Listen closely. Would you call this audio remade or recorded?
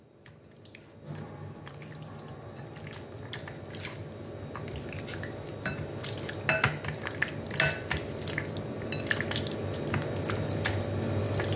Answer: recorded